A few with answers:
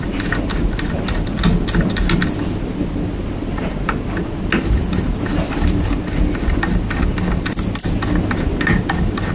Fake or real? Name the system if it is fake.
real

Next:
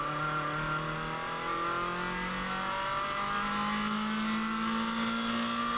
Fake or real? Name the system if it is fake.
real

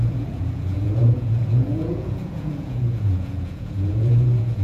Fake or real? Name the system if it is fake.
fake, vocoder, Vocos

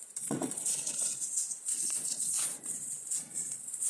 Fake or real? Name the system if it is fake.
fake, vocoder, Vocos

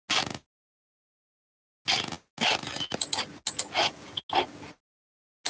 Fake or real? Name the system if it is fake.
real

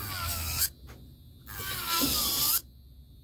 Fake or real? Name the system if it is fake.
real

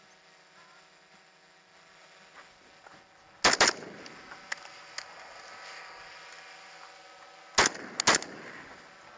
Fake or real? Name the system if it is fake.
real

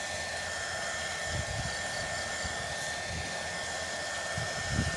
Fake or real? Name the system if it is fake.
real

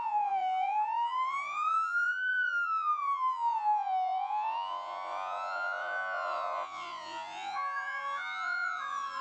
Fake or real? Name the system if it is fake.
fake, vocoder, Vocos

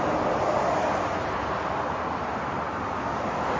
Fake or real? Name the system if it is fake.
real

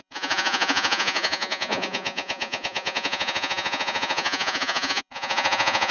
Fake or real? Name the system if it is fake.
fake, vocoder, Vocos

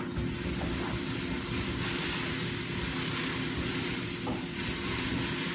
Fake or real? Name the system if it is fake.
real